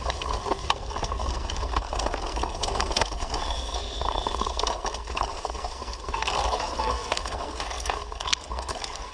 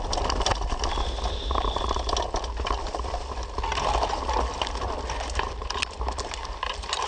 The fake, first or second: first